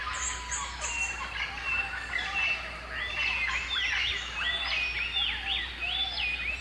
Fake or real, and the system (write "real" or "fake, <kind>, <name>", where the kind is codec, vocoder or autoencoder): real